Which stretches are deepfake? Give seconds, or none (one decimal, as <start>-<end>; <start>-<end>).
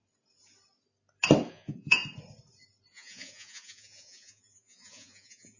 1.5-2.0; 2.9-5.6